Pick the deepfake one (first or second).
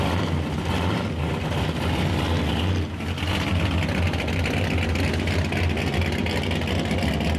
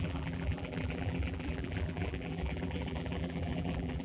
second